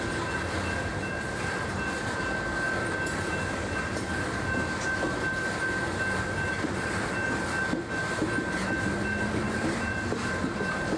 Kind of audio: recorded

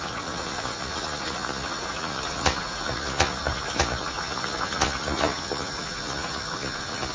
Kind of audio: remade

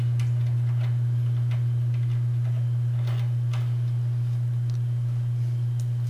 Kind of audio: recorded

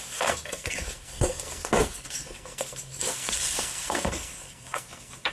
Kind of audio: remade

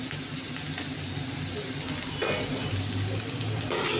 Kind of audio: recorded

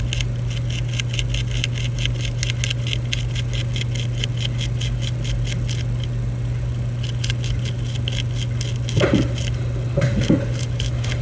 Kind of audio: recorded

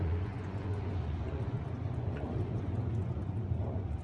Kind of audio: remade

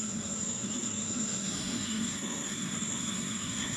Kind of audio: remade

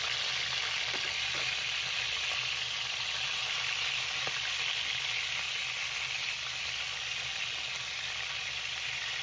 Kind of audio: recorded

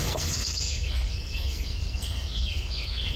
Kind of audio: remade